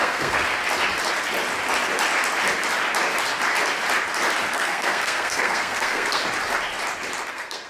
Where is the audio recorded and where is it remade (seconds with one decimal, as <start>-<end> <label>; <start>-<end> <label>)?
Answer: 0.0-0.6 remade; 0.6-4.5 recorded; 4.5-6.2 remade; 6.2-7.3 recorded; 7.3-7.7 remade